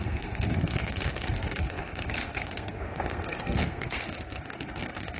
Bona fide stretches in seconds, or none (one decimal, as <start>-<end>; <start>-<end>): none